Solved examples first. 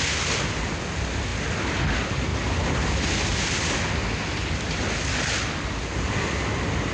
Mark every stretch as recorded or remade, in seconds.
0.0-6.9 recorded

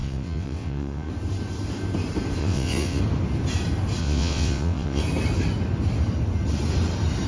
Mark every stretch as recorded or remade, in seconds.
0.0-1.1 remade; 1.1-2.4 recorded; 2.4-3.0 remade; 3.0-4.0 recorded; 4.0-5.0 remade; 5.0-7.3 recorded

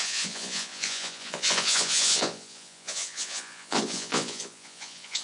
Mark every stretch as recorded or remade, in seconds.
0.0-5.2 remade

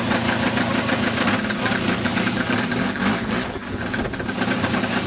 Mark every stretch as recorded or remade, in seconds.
0.0-5.1 recorded

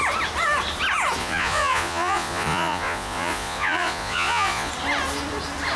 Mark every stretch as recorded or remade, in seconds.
0.0-1.2 recorded; 1.2-4.7 remade; 4.7-5.8 recorded